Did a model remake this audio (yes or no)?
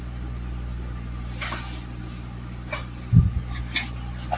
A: no